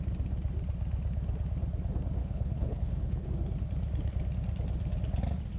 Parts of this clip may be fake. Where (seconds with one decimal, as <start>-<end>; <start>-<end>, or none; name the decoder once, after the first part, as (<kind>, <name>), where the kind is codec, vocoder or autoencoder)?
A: 2.2-3.3 (codec, HILCodec)